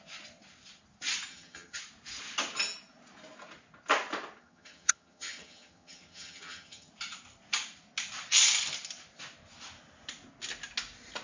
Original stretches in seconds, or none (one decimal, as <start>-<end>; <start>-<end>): 0.0-1.3; 1.8-4.4; 6.9-11.2